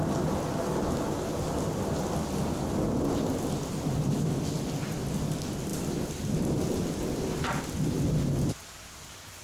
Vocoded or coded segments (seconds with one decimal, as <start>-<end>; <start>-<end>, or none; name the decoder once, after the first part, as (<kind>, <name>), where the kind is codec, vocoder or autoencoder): 5.7-7.6 (vocoder, BigVGAN v2)